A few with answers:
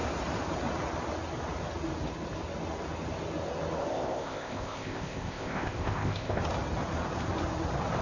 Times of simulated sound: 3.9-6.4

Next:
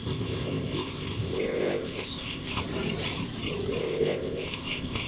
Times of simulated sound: 0.0-2.6; 3.8-5.1

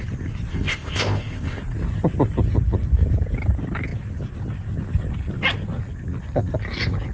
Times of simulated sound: 0.5-1.6

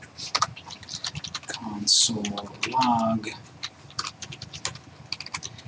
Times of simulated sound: none